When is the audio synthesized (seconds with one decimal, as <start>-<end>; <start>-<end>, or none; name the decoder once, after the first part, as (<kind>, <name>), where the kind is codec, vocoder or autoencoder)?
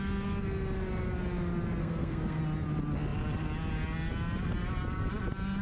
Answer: 1.8-2.4 (codec, SNAC)